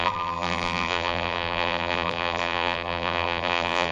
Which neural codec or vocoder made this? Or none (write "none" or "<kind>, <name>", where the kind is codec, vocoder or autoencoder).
vocoder, BigVGAN v2